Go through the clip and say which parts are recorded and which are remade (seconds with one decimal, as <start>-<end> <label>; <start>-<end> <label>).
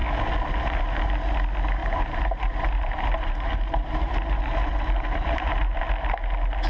0.0-1.8 recorded; 1.8-5.8 remade; 5.8-6.7 recorded